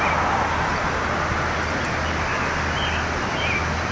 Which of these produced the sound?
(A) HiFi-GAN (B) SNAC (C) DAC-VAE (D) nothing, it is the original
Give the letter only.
D